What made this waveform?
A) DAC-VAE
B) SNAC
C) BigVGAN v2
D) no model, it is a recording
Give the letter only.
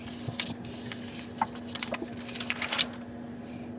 D